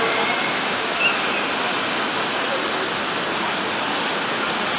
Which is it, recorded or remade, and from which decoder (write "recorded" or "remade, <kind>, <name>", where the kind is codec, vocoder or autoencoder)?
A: recorded